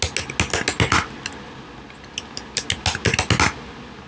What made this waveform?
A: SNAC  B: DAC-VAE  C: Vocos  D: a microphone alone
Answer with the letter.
D